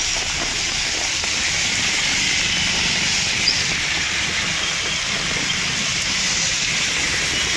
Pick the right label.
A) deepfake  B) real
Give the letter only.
B